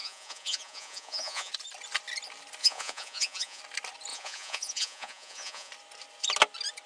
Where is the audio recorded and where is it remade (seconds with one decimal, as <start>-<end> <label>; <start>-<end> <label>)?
0.0-1.5 remade; 1.5-2.6 recorded; 2.6-3.6 remade; 3.6-4.1 recorded; 4.1-5.7 remade; 5.7-6.9 recorded